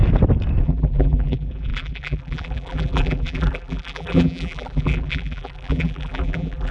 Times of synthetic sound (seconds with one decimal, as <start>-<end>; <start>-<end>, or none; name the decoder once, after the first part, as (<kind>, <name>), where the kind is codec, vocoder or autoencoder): 0.6-6.7 (vocoder, BigVGAN v2)